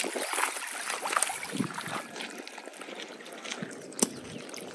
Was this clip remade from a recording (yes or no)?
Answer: no